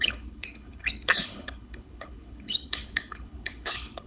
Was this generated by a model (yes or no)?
yes